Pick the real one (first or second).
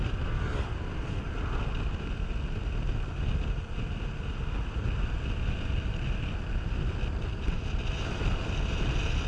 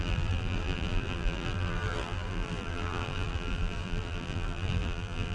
first